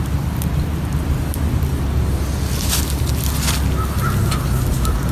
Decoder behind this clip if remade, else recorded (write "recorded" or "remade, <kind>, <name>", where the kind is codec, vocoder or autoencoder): recorded